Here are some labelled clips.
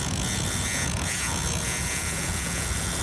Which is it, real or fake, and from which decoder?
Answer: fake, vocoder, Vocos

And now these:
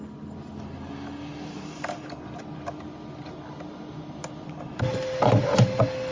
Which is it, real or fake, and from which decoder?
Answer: real